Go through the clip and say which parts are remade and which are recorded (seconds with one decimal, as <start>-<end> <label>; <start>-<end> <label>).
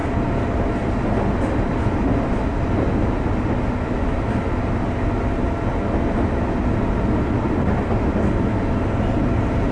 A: 0.0-9.7 recorded